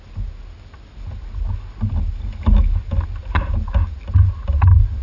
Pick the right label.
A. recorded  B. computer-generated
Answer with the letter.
A